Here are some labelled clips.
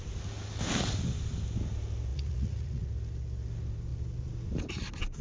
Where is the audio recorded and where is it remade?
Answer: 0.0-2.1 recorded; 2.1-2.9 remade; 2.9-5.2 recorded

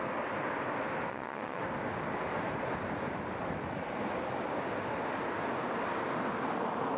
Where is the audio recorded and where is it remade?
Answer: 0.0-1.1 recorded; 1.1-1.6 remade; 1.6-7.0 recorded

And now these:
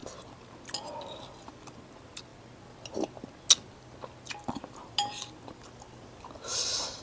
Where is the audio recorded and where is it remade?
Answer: 0.0-7.0 recorded

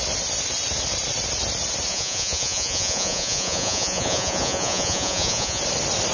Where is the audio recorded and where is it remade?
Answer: 0.0-1.9 recorded; 1.9-5.6 remade; 5.6-6.1 recorded